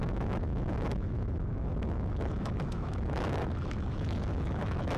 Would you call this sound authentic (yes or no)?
no